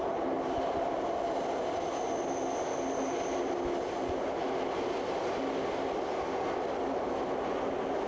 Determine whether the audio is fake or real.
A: real